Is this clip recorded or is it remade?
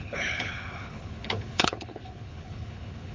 remade